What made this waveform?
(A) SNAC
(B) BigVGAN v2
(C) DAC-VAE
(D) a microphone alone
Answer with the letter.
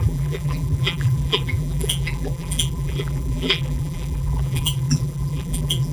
B